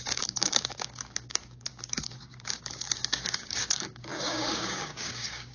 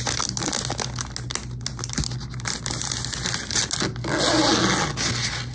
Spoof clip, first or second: first